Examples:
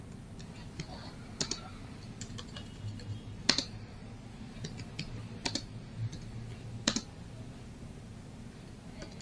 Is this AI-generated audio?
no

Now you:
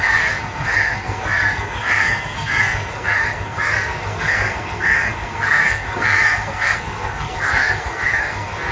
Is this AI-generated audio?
yes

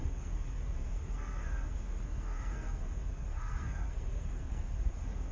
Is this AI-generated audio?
yes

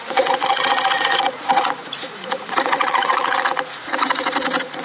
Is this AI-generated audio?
yes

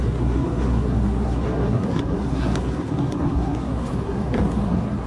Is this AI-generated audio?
yes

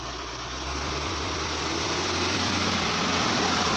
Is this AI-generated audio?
no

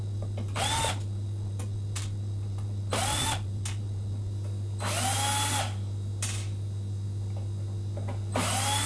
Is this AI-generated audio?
no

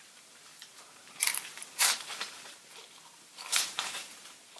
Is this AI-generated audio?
yes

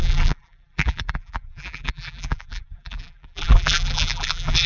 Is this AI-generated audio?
yes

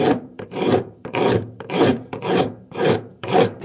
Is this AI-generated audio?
yes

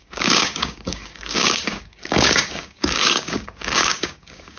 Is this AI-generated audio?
yes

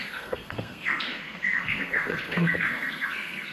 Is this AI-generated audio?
yes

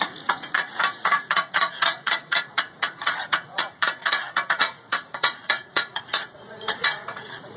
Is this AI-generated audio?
yes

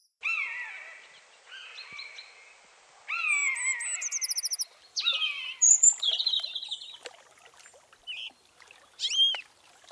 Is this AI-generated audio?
no